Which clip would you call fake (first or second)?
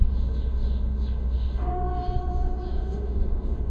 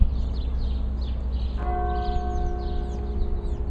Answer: first